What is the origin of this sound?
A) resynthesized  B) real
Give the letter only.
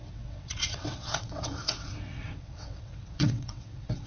A